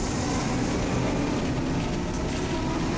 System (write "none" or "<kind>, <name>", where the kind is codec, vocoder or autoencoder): none